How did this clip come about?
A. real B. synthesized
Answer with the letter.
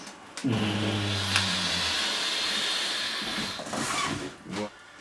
A